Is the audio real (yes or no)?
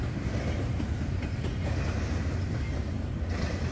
yes